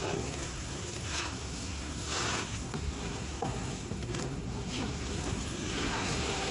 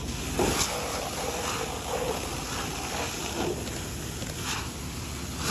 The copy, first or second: first